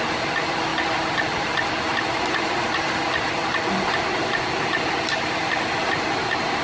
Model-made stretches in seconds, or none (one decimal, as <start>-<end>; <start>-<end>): 0.0-0.7; 2.0-3.4; 5.0-6.6

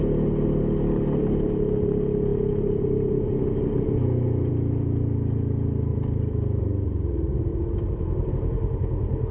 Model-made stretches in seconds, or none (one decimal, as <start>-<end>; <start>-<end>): 5.9-6.6; 7.5-8.3

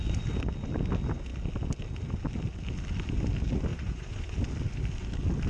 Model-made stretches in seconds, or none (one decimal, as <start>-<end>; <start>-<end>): 3.7-4.3